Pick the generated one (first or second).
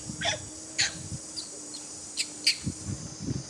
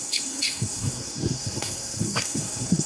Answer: second